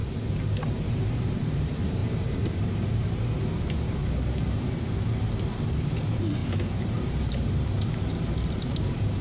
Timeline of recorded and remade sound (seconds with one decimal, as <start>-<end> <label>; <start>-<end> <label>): 0.0-0.6 recorded; 0.6-9.2 remade